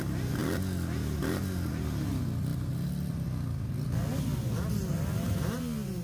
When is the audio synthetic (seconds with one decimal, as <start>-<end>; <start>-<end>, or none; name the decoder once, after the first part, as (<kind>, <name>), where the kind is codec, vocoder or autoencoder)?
none